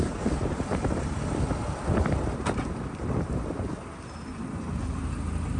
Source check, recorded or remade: recorded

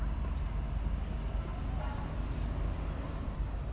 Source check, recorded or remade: recorded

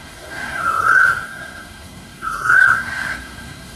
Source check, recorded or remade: remade